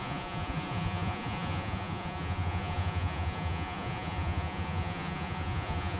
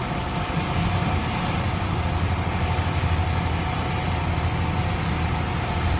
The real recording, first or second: second